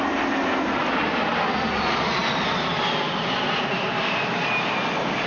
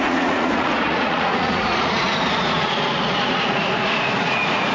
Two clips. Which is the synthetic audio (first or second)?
second